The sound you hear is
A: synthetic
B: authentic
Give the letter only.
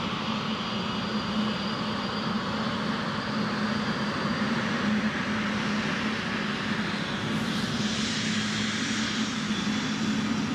B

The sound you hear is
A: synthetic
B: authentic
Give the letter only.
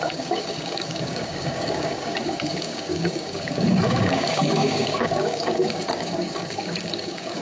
A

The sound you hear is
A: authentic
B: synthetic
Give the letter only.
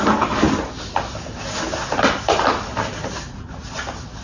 A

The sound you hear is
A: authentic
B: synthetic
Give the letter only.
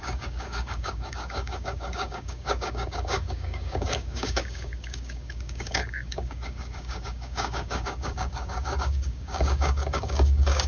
B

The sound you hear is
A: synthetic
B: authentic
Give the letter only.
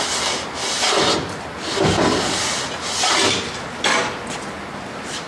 B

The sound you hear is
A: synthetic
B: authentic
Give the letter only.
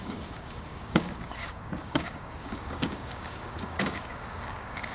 A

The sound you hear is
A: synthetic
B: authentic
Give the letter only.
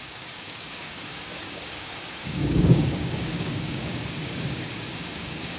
A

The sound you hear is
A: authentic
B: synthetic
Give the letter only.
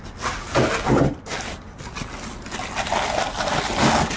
A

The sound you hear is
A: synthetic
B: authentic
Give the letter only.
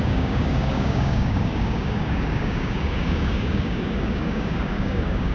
A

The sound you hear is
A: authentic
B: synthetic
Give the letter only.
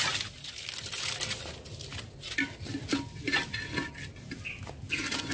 A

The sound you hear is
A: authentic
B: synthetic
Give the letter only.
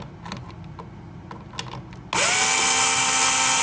A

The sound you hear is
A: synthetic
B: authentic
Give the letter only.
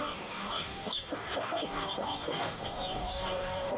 A